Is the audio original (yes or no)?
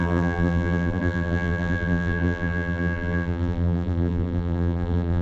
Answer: no